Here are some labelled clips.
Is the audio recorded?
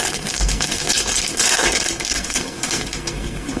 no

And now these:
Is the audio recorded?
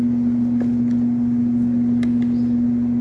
yes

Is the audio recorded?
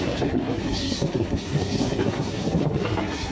no